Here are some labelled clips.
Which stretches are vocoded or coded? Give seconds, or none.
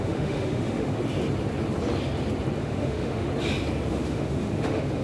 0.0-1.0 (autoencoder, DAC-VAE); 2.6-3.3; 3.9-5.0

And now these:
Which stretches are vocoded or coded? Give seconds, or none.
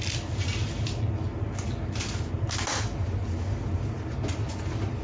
none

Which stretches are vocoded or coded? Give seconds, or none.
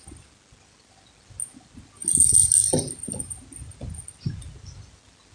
none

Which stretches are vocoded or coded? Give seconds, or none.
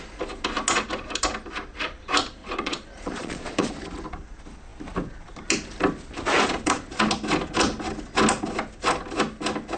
2.4-3.7 (vocoder, Vocos)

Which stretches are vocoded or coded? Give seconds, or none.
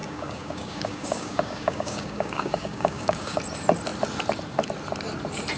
0.0-3.4 (codec, DAC)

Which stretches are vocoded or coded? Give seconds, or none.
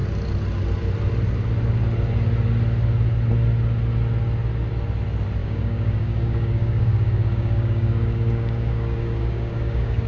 5.4-10.1 (codec, DAC)